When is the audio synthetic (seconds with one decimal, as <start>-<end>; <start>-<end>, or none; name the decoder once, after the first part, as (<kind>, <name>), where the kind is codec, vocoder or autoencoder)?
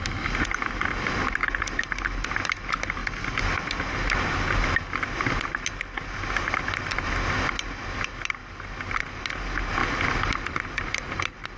none